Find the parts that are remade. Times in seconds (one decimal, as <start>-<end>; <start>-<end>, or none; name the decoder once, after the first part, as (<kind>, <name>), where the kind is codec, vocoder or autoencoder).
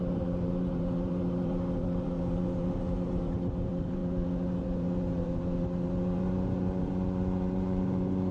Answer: 0.0-8.3 (vocoder, BigVGAN v2)